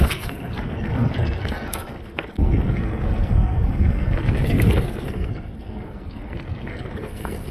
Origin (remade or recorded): remade